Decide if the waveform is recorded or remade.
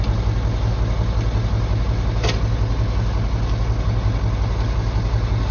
recorded